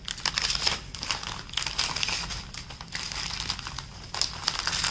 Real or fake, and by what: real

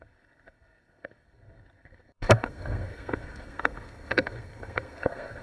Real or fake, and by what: fake, codec, SNAC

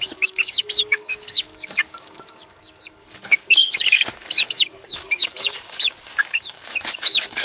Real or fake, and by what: fake, codec, DAC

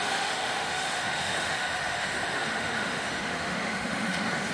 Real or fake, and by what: fake, autoencoder, DAC-VAE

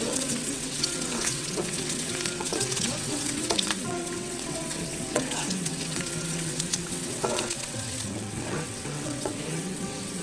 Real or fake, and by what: fake, vocoder, WaveNeXt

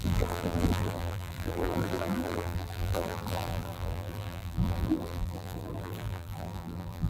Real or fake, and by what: fake, vocoder, BigVGAN v2